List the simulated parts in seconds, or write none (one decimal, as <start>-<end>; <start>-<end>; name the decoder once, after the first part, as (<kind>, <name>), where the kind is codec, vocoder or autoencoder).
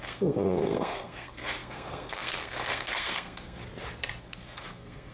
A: 0.0-3.6 (codec, SNAC); 4.2-5.1